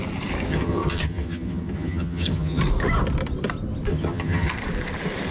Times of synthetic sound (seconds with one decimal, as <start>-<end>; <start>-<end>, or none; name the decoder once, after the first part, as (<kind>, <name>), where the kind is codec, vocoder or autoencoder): 0.5-2.6 (vocoder, HiFi-GAN); 3.9-4.5